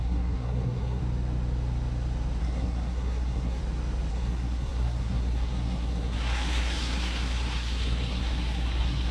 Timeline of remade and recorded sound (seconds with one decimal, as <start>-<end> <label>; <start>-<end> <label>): 0.0-1.0 remade; 1.0-2.4 recorded; 2.4-3.6 remade; 3.6-4.1 recorded; 4.1-9.1 remade